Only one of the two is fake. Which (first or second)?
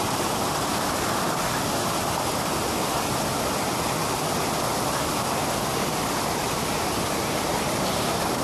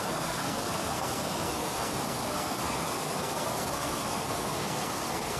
second